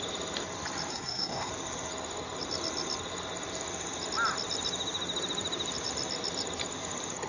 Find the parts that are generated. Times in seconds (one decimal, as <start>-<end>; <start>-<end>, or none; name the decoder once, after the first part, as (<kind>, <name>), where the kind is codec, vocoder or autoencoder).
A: 0.9-1.5 (codec, SNAC)

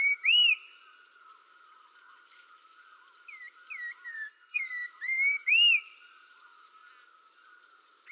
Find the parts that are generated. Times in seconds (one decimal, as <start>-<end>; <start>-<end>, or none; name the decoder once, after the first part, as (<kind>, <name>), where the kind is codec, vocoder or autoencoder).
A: 4.1-4.6 (codec, SNAC)

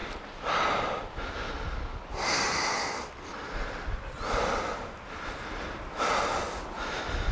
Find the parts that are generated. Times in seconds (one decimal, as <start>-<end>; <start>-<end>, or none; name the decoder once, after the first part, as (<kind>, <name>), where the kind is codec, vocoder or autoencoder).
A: none